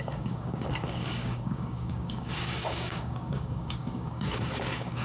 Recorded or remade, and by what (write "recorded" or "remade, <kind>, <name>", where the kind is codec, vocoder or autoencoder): remade, codec, DAC